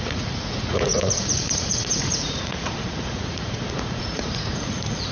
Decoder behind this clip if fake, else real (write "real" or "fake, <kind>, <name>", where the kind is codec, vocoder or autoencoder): fake, vocoder, Vocos